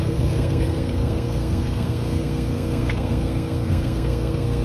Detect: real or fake fake